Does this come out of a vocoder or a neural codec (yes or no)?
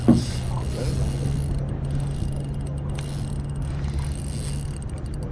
no